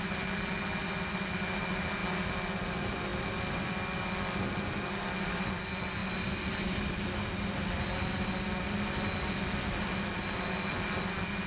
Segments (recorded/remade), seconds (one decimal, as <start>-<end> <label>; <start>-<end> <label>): 0.0-11.5 recorded